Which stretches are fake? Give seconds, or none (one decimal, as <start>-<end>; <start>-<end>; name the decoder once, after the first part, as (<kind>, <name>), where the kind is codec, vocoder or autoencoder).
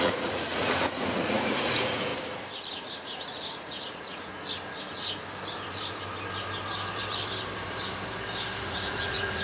0.0-2.1 (vocoder, Vocos); 2.7-4.3; 8.6-9.4